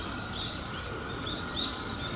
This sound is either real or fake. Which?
real